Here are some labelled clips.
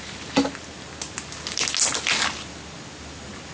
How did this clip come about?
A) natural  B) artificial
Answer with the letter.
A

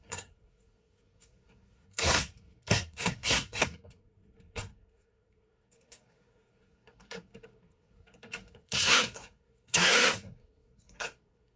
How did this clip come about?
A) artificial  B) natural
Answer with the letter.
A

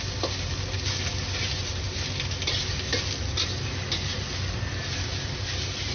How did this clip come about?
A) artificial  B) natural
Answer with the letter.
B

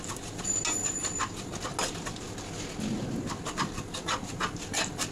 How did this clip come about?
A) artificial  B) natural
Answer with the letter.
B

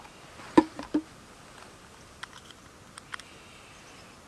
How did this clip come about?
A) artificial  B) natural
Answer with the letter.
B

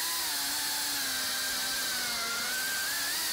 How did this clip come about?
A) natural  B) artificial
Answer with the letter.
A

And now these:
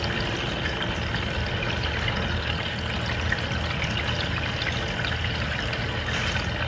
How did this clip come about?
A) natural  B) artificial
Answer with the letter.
A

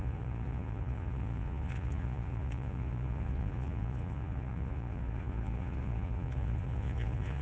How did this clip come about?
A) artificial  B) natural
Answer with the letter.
A